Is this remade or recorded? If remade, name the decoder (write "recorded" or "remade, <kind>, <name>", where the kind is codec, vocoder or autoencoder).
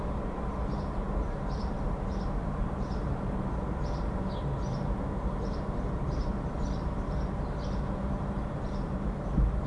remade, vocoder, BigVGAN v2